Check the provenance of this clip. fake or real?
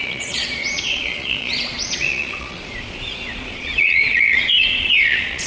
fake